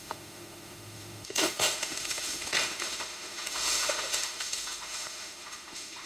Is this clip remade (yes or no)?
yes